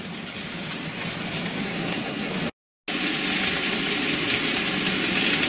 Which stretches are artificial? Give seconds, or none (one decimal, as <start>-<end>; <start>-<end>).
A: 1.6-2.3